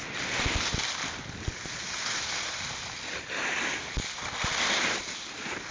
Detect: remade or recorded recorded